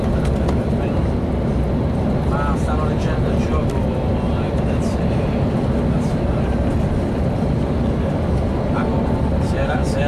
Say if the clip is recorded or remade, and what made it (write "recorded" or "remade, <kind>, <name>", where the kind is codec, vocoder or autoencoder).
recorded